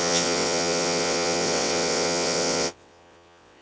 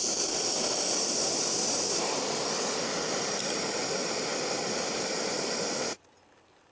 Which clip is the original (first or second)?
second